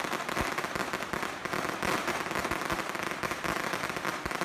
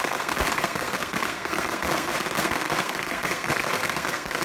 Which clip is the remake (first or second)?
second